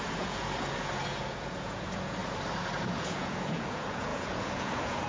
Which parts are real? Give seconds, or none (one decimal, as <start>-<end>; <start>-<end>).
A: 2.2-3.0